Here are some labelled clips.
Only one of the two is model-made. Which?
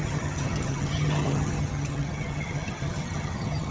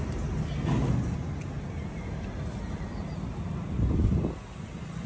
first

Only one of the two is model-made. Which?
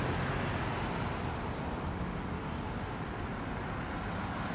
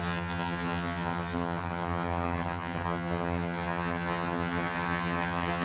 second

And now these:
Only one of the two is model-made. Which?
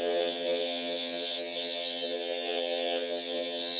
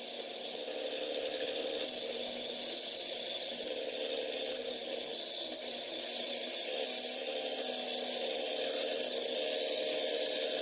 first